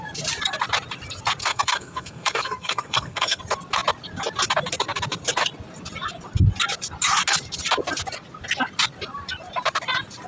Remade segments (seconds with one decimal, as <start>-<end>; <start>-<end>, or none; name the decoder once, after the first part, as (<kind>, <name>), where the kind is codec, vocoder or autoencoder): 1.4-3.4 (codec, SNAC)